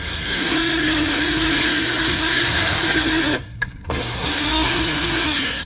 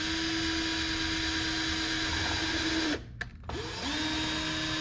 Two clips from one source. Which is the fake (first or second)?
first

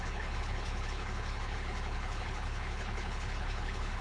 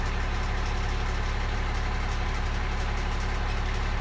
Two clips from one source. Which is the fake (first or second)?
first